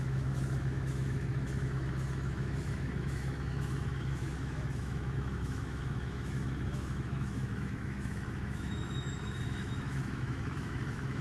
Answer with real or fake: fake